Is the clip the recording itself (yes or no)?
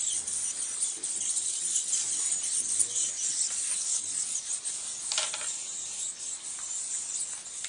yes